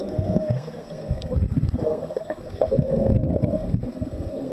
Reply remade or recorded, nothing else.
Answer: remade